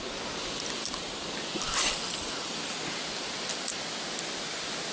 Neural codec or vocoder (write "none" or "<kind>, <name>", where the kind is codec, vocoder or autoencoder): none